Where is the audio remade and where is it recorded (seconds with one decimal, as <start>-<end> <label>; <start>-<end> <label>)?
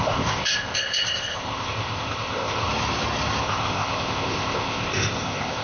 0.0-2.7 remade; 2.7-3.4 recorded; 3.4-5.6 remade